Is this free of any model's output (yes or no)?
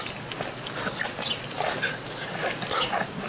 yes